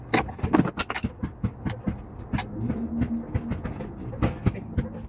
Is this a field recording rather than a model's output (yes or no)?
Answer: yes